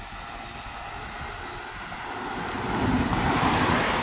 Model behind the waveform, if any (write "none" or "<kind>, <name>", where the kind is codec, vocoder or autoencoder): none